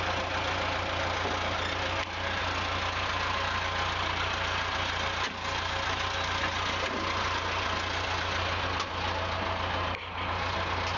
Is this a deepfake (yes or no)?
no